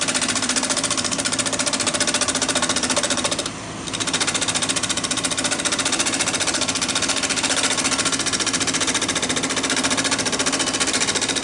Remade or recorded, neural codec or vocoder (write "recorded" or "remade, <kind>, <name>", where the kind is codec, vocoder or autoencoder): recorded